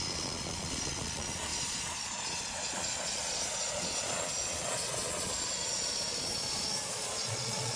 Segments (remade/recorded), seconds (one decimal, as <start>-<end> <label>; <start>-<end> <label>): 0.0-7.8 remade